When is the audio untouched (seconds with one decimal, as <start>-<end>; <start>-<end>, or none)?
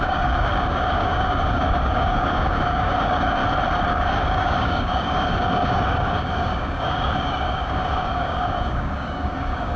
3.4-3.9